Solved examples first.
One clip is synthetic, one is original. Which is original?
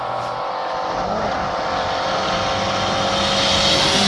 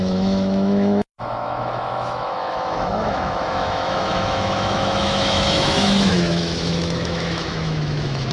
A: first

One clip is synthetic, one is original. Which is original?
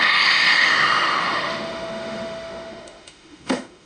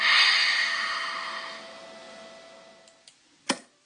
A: second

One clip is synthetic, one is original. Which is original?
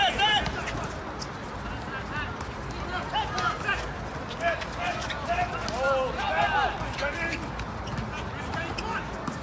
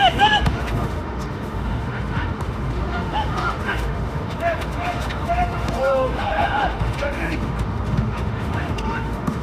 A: first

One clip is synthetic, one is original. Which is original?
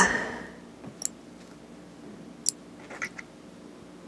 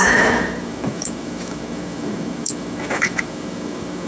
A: first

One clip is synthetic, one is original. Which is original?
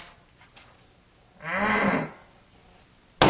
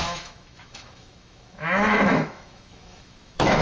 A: first